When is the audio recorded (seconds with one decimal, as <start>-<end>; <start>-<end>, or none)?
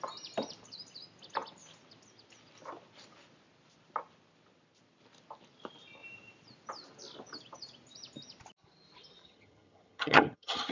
0.0-9.2